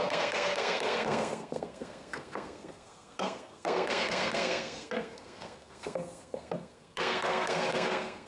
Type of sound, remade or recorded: remade